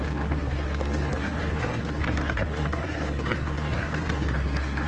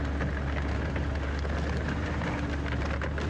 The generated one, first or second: first